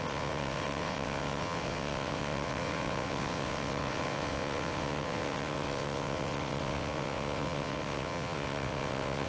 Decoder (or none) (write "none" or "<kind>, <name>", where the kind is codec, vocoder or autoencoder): vocoder, WaveNeXt